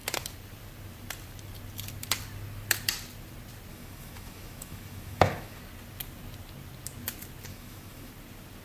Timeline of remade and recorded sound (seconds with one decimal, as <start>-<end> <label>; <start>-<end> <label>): 0.0-3.7 recorded; 3.7-5.6 remade; 5.6-7.5 recorded; 7.5-8.1 remade; 8.1-8.6 recorded